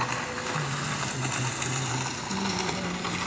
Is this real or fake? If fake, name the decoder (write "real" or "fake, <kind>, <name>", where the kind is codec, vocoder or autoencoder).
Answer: real